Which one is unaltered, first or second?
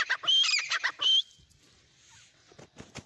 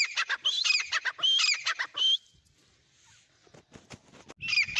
second